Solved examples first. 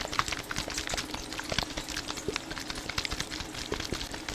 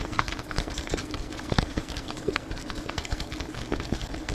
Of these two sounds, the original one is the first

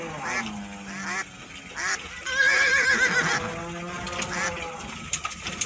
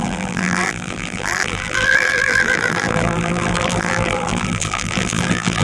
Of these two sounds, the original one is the first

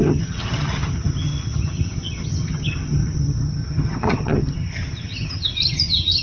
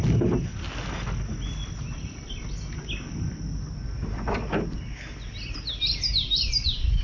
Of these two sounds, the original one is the second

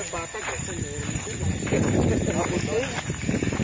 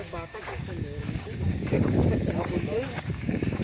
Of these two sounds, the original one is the first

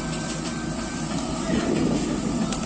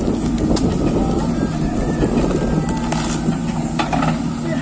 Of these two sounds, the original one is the second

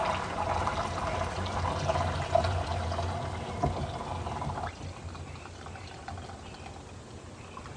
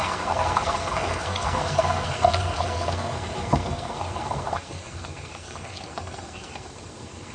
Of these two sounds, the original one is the first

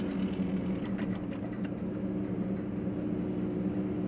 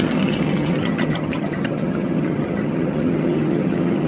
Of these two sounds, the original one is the first